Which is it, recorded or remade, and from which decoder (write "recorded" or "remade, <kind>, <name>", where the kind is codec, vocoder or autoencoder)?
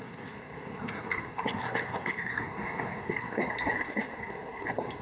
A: remade, codec, SNAC